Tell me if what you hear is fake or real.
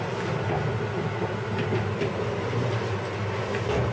real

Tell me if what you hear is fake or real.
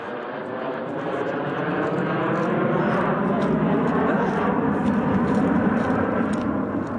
real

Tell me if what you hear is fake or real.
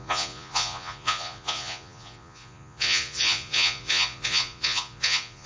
fake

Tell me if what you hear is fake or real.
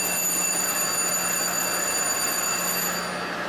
real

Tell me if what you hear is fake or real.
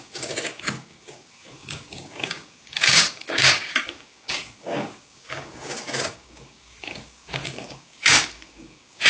fake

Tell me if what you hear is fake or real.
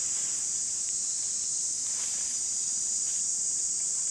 fake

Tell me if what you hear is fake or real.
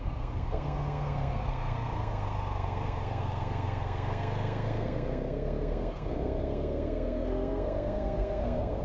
fake